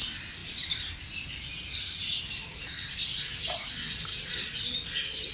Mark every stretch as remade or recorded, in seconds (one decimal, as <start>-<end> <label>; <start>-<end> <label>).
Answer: 0.0-0.4 recorded; 0.4-3.3 remade; 3.3-4.1 recorded; 4.1-5.3 remade